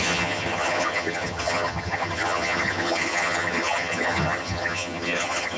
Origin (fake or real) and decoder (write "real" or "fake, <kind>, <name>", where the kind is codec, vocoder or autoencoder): fake, vocoder, HiFi-GAN